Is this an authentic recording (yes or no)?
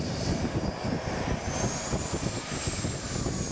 yes